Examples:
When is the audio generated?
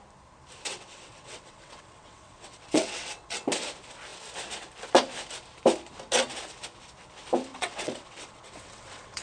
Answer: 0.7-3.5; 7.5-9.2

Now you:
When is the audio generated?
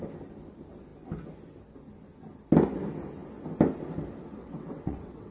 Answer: 4.4-5.3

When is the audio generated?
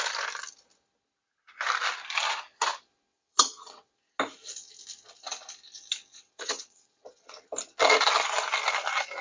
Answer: 3.1-3.9; 6.1-7.3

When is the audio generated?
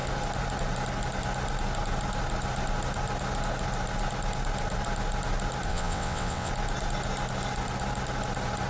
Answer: 5.7-6.5